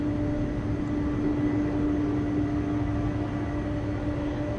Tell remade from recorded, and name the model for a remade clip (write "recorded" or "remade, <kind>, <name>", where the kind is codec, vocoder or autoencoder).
recorded